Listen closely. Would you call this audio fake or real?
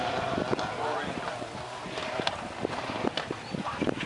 real